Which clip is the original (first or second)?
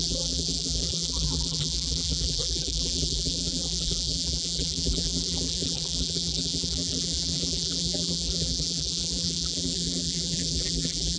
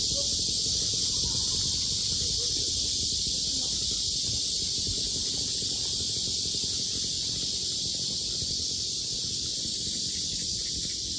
second